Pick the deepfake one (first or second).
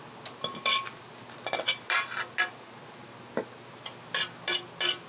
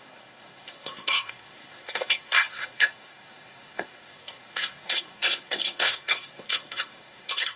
second